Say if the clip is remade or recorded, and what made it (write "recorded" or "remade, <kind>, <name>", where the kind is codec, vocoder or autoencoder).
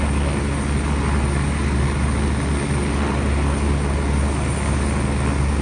recorded